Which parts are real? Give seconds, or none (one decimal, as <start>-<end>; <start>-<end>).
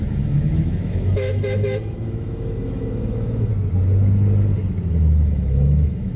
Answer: 3.5-4.9